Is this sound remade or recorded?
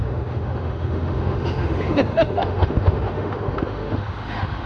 remade